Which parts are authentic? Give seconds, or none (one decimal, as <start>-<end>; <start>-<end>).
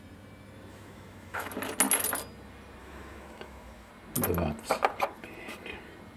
0.0-0.7; 1.5-2.8; 3.9-6.2